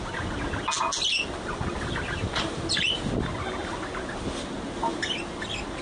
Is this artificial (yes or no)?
no